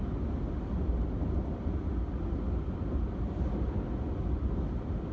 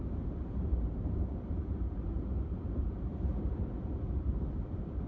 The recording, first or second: first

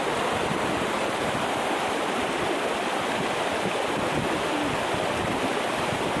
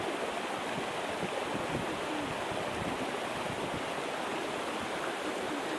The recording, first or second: second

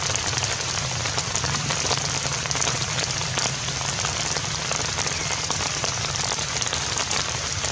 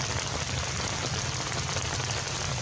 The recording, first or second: second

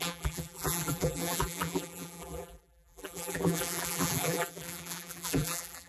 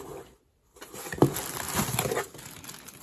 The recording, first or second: second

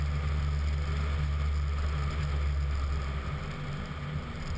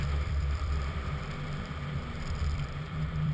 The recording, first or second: first